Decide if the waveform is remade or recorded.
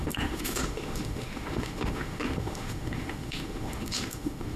remade